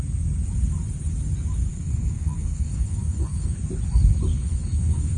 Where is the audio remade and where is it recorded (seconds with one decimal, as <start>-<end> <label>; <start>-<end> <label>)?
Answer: 0.0-1.7 recorded; 1.7-3.6 remade; 3.6-4.3 recorded; 4.3-5.2 remade